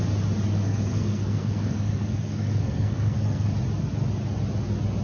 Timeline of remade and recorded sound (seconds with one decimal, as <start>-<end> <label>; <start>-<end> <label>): 0.0-0.5 recorded; 0.5-3.5 remade; 3.5-5.0 recorded